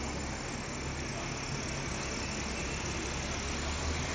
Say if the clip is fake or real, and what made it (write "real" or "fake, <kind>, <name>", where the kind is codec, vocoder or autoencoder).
real